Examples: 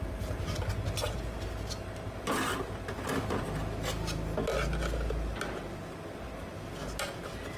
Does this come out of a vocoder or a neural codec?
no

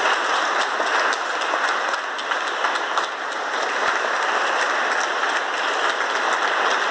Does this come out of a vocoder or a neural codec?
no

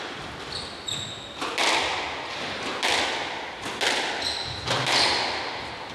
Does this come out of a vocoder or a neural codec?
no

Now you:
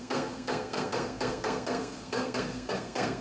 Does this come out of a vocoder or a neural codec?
yes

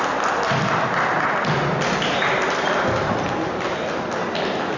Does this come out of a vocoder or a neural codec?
no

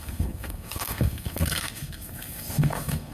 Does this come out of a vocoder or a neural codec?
yes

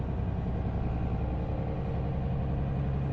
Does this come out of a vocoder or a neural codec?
no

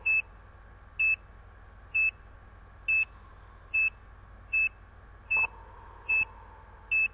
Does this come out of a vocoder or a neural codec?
no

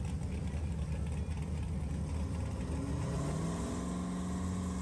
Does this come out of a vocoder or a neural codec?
no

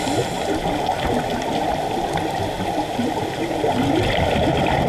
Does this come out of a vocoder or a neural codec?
no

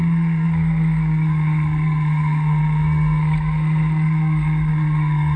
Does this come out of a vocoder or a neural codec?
yes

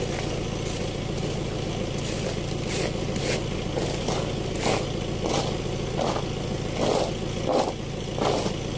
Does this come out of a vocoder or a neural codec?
no